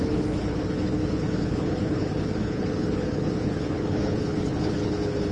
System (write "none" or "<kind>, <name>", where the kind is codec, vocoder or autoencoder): codec, HILCodec